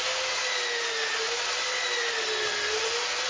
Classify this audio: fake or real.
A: real